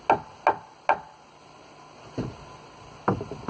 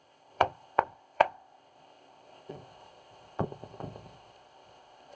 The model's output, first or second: second